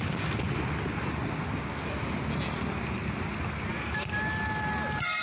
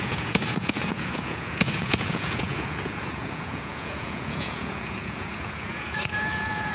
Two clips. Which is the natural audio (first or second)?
first